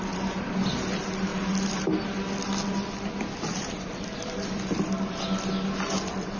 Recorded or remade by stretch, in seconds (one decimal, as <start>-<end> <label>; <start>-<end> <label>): 0.0-6.4 recorded